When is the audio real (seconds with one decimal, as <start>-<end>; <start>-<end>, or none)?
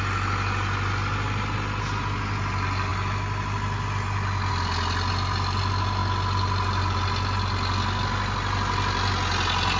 0.0-9.8